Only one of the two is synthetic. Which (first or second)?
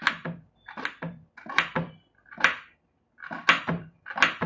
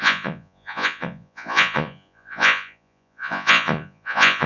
second